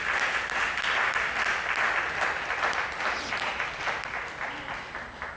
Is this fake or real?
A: real